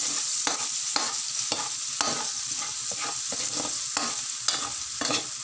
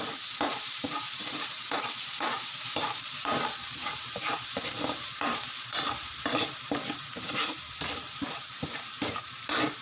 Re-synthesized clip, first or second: second